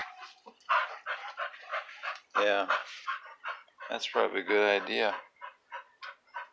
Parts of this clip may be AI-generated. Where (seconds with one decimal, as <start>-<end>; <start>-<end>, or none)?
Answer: 1.7-2.2; 2.8-4.5